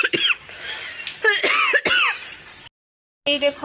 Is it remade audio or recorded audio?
recorded